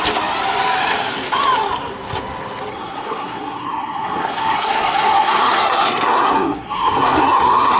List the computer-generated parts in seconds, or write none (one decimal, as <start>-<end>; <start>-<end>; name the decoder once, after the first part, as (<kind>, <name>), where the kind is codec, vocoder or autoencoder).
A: 2.7-7.8 (codec, SNAC)